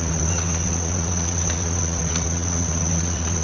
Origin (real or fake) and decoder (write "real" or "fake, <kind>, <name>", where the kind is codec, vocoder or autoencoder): fake, vocoder, WaveNeXt